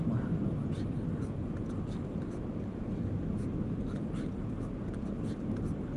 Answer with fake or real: real